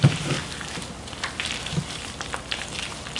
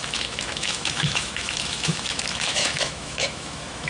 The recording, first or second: first